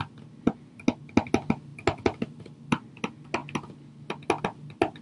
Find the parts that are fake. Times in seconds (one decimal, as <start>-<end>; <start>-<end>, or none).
none